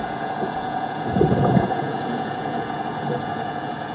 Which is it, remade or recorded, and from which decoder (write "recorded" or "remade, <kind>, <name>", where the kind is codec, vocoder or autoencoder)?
remade, vocoder, Vocos